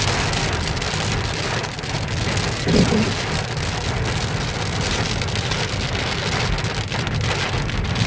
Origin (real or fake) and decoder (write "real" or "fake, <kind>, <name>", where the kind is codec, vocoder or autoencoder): real